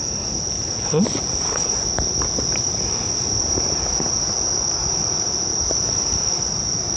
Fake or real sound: real